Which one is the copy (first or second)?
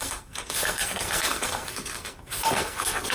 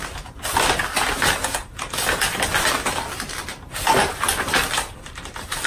first